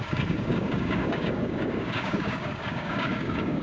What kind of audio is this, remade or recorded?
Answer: remade